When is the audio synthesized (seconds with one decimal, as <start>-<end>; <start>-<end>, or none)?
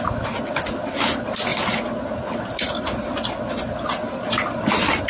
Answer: none